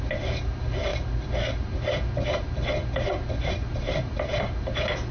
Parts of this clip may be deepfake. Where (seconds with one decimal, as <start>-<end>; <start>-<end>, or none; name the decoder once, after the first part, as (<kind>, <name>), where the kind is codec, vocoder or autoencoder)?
none